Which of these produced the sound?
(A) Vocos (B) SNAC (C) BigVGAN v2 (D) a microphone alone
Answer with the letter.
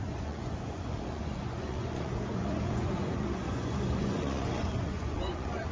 A